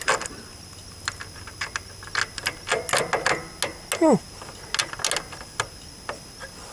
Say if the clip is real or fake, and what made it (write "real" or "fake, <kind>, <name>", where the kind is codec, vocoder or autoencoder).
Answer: real